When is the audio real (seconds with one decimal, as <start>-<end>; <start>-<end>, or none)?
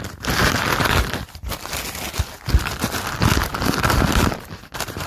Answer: 0.0-5.1